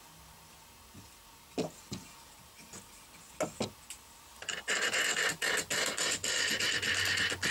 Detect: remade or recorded recorded